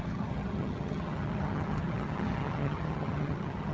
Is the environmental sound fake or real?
fake